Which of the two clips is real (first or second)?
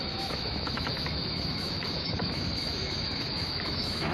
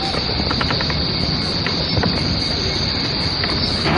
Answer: second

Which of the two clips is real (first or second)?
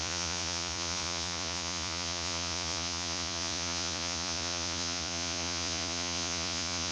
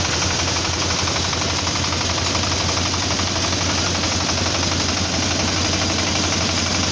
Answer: second